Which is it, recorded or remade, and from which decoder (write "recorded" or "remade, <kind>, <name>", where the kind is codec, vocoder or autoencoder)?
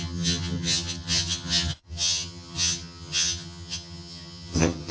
remade, vocoder, HiFi-GAN